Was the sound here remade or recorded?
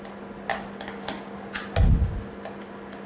recorded